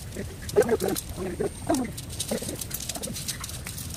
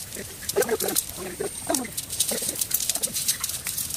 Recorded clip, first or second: first